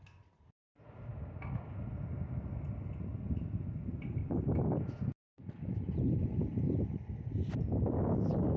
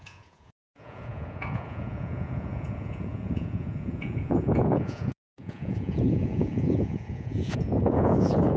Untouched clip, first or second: first